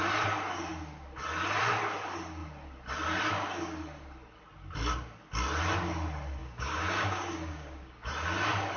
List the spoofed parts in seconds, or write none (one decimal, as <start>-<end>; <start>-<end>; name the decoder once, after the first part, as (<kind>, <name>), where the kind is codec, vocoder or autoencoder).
6.4-8.1 (codec, DAC)